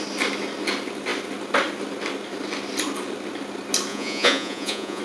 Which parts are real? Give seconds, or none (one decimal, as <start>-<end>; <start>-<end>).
0.0-3.9